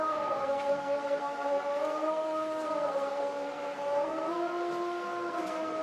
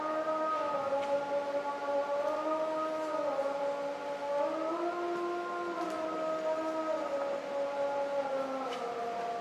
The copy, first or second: first